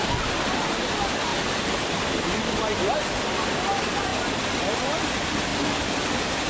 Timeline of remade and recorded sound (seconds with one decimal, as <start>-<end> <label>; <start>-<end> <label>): 0.0-6.5 recorded